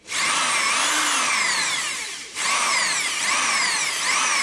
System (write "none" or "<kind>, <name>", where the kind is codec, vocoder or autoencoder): vocoder, BigVGAN v2